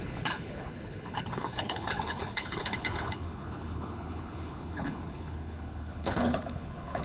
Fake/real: fake